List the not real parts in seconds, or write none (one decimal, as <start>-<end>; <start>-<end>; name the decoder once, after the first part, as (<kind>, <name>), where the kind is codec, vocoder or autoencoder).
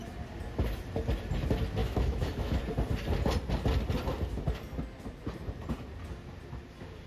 1.8-2.6 (autoencoder, DAC-VAE)